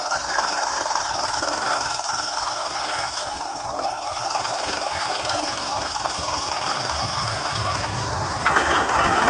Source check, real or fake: fake